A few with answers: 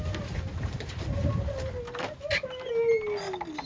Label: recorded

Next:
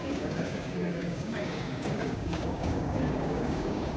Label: remade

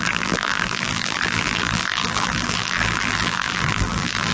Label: remade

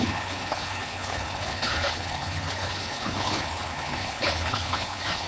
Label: remade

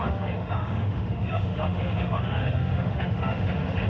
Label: remade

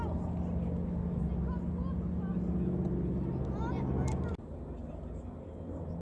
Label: recorded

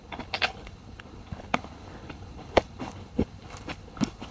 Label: remade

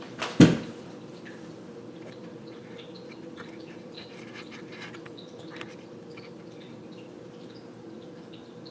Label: recorded